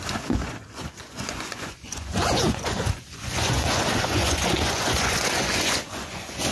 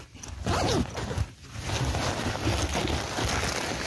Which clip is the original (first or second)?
second